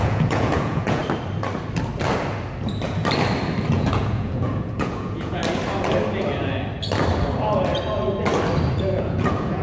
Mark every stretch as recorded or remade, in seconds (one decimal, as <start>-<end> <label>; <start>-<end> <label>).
0.0-1.0 remade; 1.0-3.7 recorded; 3.7-5.4 remade; 5.4-8.9 recorded; 8.9-9.6 remade